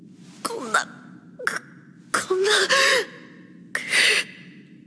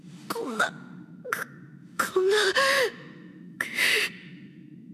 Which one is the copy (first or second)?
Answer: second